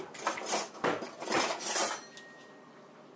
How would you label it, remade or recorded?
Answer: recorded